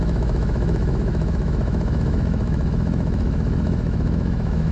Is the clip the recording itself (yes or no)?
no